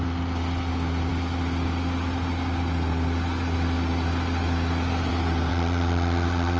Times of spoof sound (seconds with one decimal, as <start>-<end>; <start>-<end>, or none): 5.5-6.6